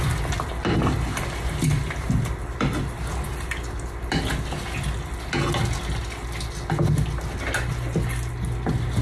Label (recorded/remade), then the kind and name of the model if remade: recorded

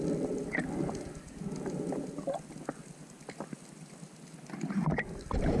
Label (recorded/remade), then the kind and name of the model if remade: recorded